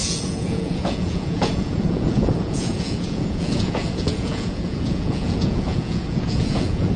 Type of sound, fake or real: fake